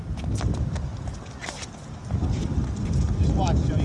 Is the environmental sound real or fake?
real